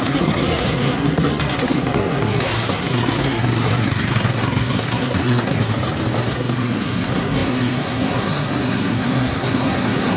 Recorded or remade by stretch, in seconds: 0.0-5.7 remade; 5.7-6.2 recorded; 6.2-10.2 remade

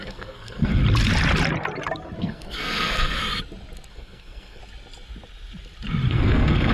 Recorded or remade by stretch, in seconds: 0.0-0.8 remade; 0.8-2.2 recorded; 2.2-3.2 remade; 3.2-3.9 recorded; 3.9-4.6 remade; 4.6-6.1 recorded; 6.1-6.7 remade

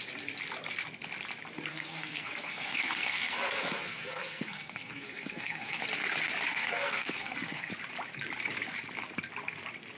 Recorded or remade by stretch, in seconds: 0.0-1.7 recorded; 1.7-5.8 remade; 5.8-6.5 recorded; 6.5-7.7 remade; 7.7-10.0 recorded

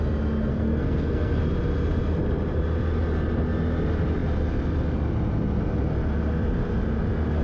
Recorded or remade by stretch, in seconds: 0.0-0.5 recorded; 0.5-1.4 remade; 1.4-7.4 recorded